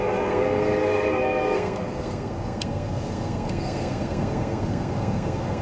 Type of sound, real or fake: fake